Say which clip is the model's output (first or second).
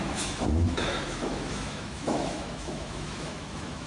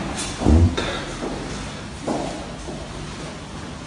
first